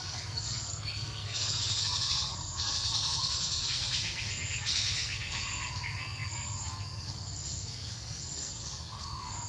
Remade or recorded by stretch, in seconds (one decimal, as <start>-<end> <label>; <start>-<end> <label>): 0.0-9.5 remade